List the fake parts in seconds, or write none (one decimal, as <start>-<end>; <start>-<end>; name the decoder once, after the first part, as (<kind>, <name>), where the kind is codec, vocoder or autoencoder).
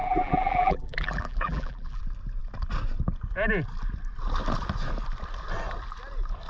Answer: 0.0-2.0 (vocoder, BigVGAN v2)